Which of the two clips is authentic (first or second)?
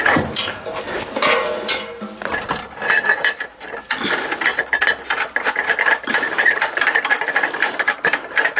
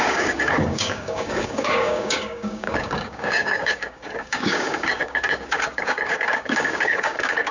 first